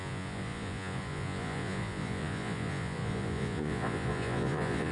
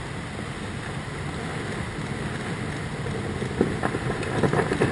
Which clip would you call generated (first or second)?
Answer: first